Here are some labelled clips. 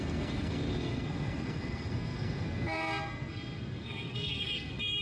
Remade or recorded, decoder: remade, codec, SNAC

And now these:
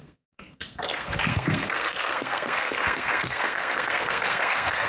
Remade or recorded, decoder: remade, codec, SNAC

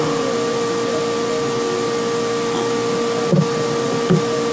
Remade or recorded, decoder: recorded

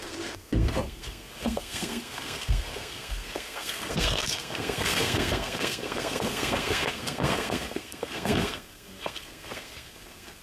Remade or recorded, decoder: remade, codec, SNAC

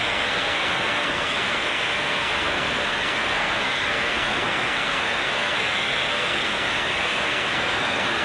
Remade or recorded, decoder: remade, codec, SNAC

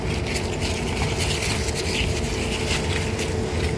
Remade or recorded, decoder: recorded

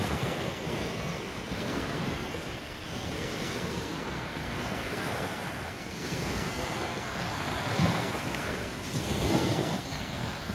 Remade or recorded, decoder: remade, codec, SNAC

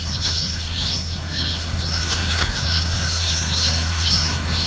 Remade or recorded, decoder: remade, codec, SNAC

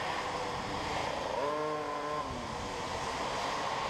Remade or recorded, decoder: recorded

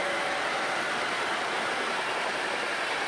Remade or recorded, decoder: recorded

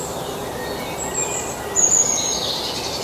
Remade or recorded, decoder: recorded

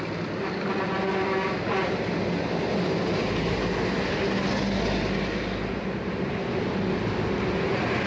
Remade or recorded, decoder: recorded